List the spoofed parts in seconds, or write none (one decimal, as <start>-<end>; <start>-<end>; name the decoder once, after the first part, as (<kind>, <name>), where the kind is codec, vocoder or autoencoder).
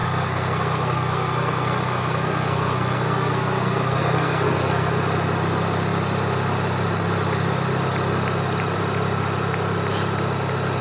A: 0.0-4.9 (codec, SNAC)